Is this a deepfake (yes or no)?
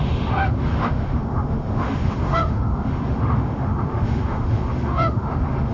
yes